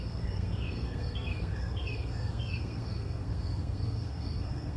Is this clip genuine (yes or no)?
no